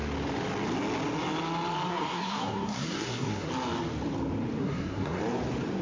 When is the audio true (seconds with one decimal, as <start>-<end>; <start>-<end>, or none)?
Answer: 0.0-1.9; 3.5-4.6; 5.2-5.8

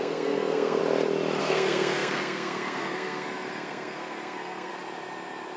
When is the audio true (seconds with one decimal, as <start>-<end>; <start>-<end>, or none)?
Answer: 0.8-1.4; 4.7-5.6

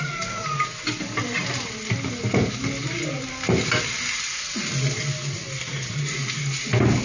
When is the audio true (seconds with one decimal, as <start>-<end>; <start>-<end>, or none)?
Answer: 0.0-7.0